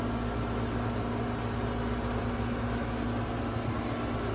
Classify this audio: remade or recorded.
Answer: recorded